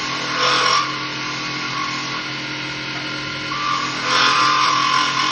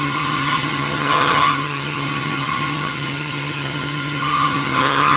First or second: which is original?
first